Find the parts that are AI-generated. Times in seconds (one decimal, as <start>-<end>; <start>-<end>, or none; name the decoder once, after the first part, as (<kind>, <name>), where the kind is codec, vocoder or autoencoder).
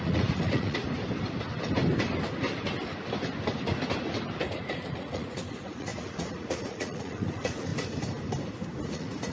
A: 0.0-0.8 (vocoder, Vocos); 4.6-7.7; 8.9-9.3